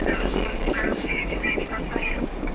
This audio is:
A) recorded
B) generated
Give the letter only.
B